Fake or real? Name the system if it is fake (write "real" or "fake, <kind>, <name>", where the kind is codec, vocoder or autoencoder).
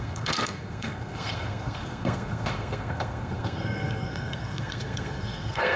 fake, codec, SNAC